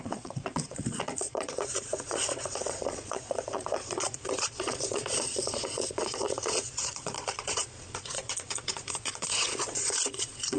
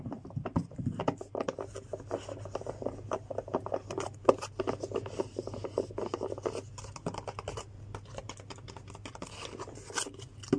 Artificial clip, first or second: first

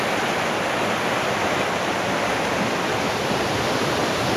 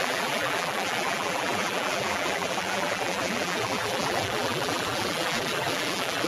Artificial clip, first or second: second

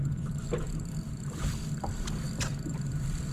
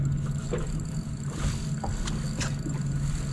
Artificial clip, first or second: first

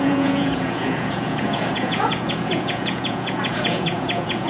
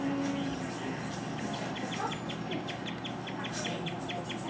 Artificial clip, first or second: first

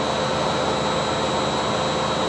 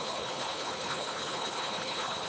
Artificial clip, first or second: second